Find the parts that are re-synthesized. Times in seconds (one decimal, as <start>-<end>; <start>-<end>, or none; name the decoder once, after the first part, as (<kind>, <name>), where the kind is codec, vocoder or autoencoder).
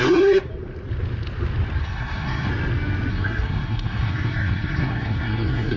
0.0-0.5 (codec, SNAC); 1.8-2.5; 3.1-5.8